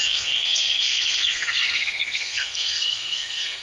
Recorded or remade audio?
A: remade